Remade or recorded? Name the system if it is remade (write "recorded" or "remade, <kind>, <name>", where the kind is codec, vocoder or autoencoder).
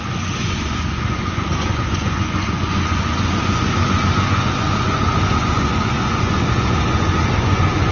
remade, vocoder, Vocos